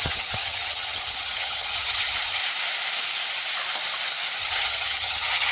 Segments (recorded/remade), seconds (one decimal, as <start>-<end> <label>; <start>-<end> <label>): 0.0-2.4 remade; 2.4-4.4 recorded; 4.4-5.5 remade